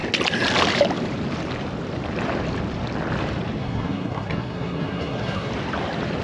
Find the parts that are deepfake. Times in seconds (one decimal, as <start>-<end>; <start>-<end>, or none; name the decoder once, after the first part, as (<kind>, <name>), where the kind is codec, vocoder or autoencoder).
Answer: 3.6-5.5 (codec, SNAC)